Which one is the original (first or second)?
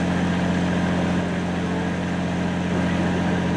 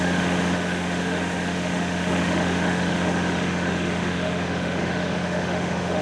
first